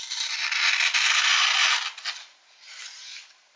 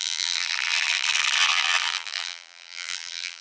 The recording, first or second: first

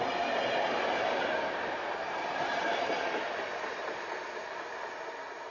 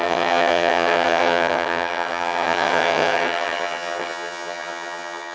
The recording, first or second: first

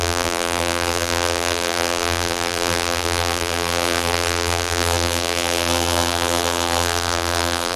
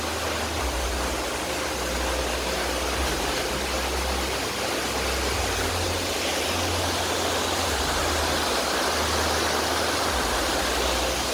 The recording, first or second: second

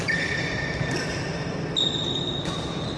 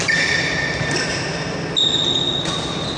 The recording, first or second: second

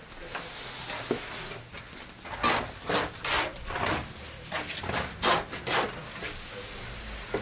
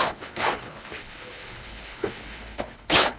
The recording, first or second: first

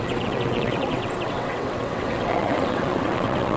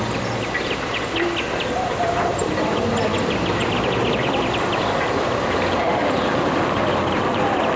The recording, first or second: second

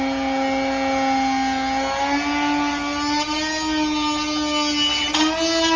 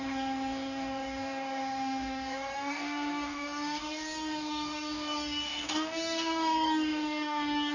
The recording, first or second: first